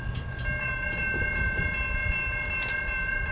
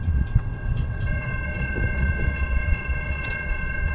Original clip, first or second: first